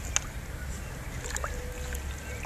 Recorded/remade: recorded